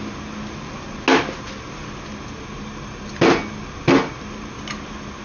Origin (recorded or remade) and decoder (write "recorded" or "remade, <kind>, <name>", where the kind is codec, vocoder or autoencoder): recorded